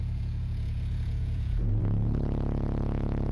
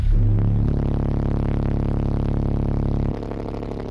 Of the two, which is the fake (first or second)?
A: first